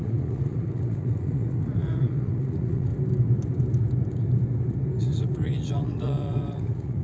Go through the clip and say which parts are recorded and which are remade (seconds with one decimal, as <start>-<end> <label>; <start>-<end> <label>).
0.0-2.9 remade; 2.9-5.0 recorded; 5.0-7.0 remade